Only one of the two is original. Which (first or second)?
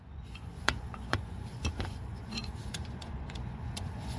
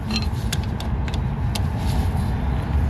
second